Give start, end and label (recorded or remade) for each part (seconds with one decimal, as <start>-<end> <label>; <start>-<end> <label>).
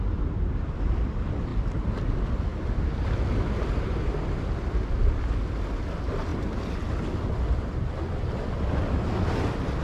0.0-9.8 recorded